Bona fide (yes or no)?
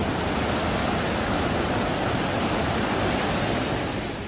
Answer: yes